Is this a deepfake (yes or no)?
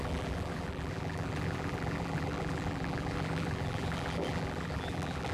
yes